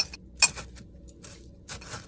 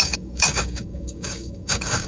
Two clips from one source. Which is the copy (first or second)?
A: second